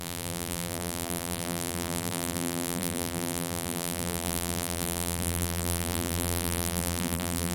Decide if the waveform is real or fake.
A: fake